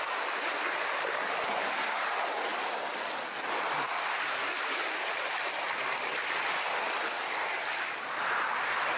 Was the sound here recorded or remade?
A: recorded